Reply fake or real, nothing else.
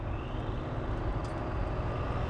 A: real